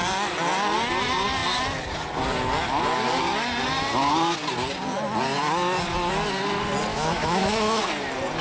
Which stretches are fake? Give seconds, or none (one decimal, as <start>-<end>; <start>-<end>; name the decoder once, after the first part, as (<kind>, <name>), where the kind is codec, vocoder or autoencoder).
6.9-7.8 (autoencoder, DAC-VAE)